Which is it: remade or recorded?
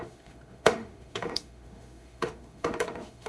remade